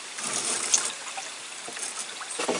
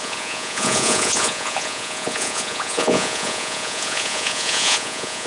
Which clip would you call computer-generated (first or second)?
second